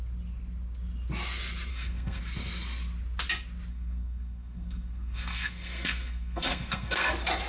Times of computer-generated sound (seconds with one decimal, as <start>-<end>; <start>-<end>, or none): 1.7-2.2; 3.7-7.1